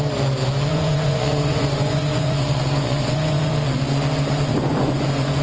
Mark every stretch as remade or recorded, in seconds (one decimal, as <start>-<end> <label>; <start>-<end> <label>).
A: 0.0-0.7 recorded; 0.7-3.5 remade; 3.5-4.5 recorded; 4.5-5.4 remade